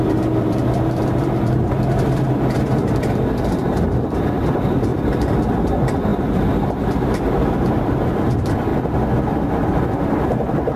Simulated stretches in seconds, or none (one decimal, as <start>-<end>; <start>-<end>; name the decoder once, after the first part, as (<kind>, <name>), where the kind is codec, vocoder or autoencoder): 0.0-4.9 (vocoder, BigVGAN v2); 5.4-8.7; 9.7-10.8